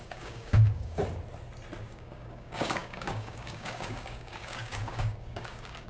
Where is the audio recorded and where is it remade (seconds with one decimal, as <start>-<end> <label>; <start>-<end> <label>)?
0.0-1.0 remade; 1.0-1.8 recorded; 1.8-5.9 remade